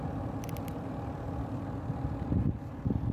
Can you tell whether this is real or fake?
real